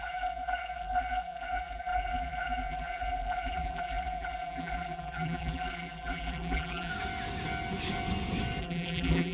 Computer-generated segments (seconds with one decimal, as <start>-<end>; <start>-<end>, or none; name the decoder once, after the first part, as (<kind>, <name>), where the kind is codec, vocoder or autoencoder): 0.0-6.9 (vocoder, BigVGAN v2); 8.6-9.3